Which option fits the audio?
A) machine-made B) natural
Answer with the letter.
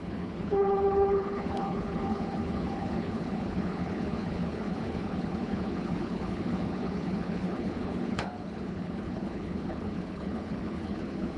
A